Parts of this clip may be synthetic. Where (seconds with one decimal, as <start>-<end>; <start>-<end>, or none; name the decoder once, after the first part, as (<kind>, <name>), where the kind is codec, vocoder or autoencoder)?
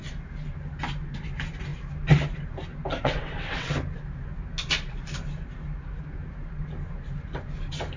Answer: 3.0-3.7 (vocoder, WaveNeXt)